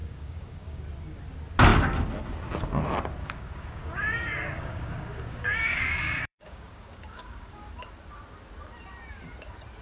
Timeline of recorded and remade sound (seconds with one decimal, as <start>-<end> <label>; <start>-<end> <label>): 0.0-0.8 remade; 0.8-3.2 recorded; 3.2-7.8 remade; 7.8-9.8 recorded